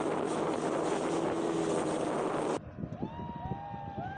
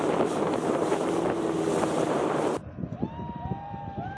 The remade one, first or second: second